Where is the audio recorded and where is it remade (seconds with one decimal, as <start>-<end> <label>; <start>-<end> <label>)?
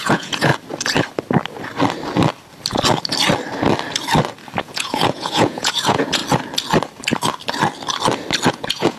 0.0-0.5 remade; 0.5-4.6 recorded; 4.6-6.2 remade; 6.2-8.5 recorded; 8.5-9.0 remade